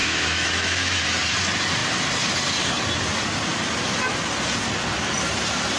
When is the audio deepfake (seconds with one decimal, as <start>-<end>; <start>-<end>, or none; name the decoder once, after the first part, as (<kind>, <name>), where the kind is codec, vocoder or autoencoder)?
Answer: 0.0-1.0 (autoencoder, DAC-VAE)